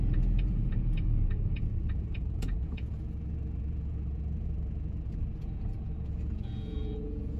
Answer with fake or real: fake